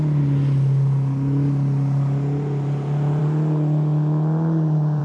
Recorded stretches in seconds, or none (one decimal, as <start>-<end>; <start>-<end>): 0.0-5.0